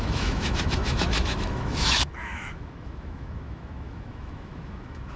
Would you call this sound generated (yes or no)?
yes